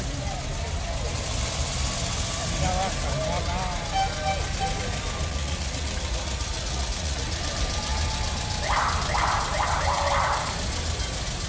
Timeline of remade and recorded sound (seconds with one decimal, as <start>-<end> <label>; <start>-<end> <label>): 0.0-5.3 recorded; 5.3-7.4 remade; 7.4-11.5 recorded